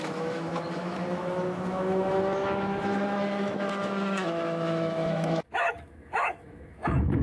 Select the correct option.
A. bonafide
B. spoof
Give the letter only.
B